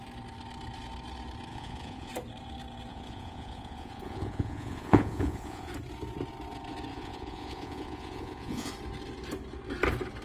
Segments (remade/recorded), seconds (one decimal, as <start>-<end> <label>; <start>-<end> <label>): 0.0-1.5 recorded; 1.5-2.1 remade; 2.1-2.9 recorded; 2.9-5.7 remade; 5.7-6.9 recorded; 6.9-8.7 remade; 8.7-10.2 recorded

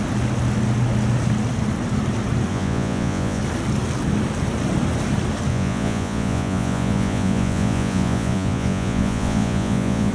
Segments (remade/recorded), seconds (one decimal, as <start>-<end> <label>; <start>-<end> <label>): 0.0-2.5 recorded; 2.5-3.4 remade; 3.4-5.5 recorded; 5.5-10.1 remade

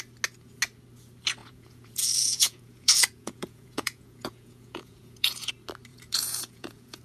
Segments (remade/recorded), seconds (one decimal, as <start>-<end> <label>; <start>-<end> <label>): 0.0-1.4 recorded; 1.4-5.5 remade; 5.5-5.9 recorded; 5.9-7.0 remade

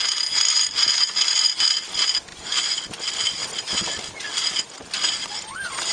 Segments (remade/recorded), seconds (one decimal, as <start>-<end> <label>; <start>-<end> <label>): 0.0-2.3 recorded; 2.3-2.8 remade; 2.8-5.9 recorded

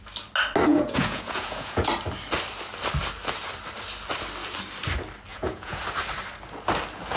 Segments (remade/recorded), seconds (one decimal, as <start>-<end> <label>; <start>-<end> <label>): 0.0-0.7 recorded; 0.7-1.9 remade; 1.9-5.3 recorded; 5.3-5.8 remade; 5.8-7.2 recorded

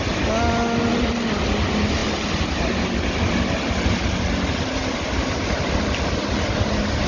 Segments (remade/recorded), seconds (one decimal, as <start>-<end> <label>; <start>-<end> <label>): 0.0-7.1 recorded

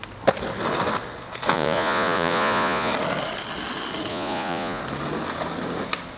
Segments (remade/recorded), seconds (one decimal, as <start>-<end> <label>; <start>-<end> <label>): 0.0-1.5 recorded; 1.5-2.9 remade; 2.9-4.1 recorded; 4.1-4.8 remade; 4.8-6.2 recorded

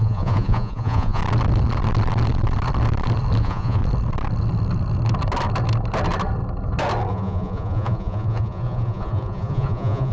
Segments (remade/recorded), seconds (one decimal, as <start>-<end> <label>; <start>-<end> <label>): 0.0-1.2 remade; 1.2-3.4 recorded; 3.4-3.8 remade; 3.8-7.1 recorded; 7.1-10.1 remade